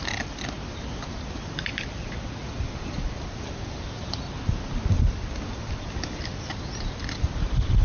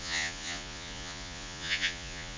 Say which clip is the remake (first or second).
second